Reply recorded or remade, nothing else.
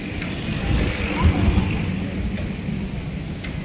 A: recorded